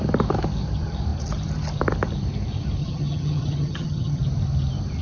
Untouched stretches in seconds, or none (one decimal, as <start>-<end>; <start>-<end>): 0.0-2.8; 4.2-5.0